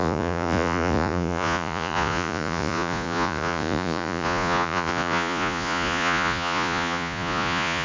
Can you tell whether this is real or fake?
fake